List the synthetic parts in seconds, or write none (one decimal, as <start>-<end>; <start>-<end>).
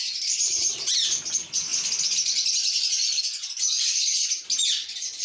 none